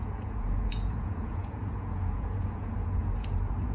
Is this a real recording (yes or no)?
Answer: no